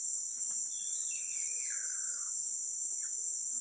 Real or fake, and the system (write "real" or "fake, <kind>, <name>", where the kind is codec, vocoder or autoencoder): real